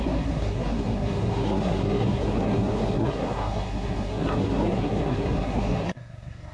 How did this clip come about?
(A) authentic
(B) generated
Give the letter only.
B